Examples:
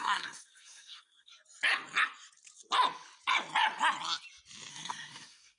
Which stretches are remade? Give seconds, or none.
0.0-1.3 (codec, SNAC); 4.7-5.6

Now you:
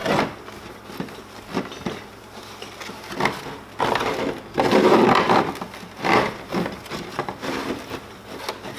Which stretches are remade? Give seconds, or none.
3.4-8.8 (vocoder, BigVGAN v2)

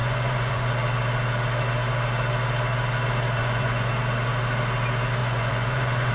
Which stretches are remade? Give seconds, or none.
0.0-0.7 (vocoder, Vocos); 3.4-3.9; 5.2-6.1

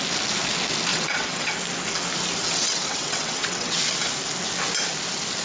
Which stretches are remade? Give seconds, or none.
0.9-1.5 (vocoder, WaveNeXt); 2.4-3.9